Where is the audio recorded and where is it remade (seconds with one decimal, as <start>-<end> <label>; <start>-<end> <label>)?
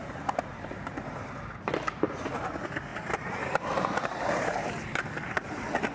0.0-1.3 remade; 1.3-2.9 recorded; 2.9-4.7 remade; 4.7-5.9 recorded